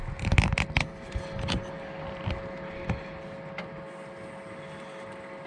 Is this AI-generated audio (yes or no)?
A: no